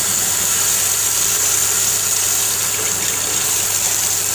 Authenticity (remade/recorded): recorded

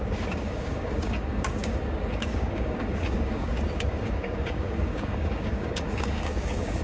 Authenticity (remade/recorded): remade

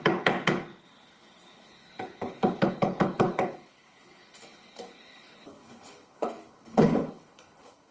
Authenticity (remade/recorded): remade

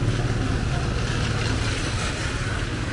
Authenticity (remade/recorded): recorded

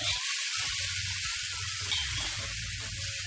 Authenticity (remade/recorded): recorded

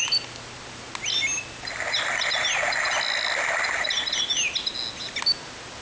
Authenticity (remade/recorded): recorded